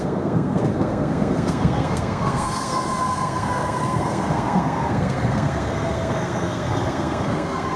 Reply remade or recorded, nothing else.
remade